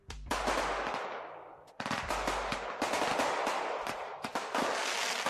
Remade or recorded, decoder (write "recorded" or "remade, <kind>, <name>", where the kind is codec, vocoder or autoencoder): recorded